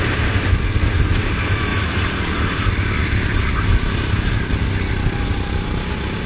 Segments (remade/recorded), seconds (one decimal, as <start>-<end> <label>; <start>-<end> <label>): 0.0-6.3 recorded